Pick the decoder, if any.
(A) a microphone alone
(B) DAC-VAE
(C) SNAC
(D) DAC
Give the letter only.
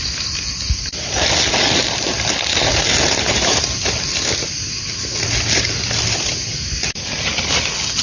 A